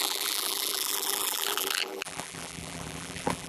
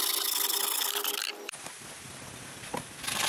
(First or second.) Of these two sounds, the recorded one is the second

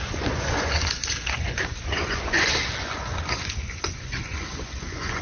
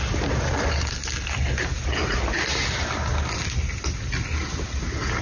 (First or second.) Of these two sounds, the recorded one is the second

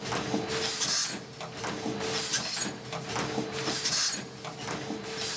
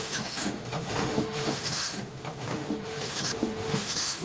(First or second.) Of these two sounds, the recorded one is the first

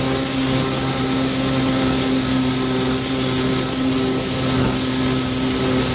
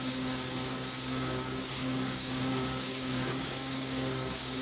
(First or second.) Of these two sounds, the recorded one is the first